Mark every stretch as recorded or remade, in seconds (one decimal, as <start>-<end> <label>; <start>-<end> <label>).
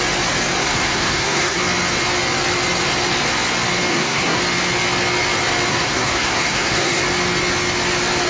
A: 0.0-0.6 recorded; 0.6-1.6 remade; 1.6-3.9 recorded; 3.9-4.4 remade; 4.4-5.7 recorded; 5.7-7.0 remade; 7.0-8.3 recorded